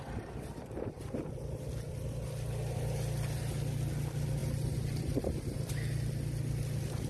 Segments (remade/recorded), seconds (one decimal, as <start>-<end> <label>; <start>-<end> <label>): 0.0-0.6 recorded; 0.6-1.7 remade; 1.7-4.4 recorded; 4.4-5.7 remade; 5.7-7.1 recorded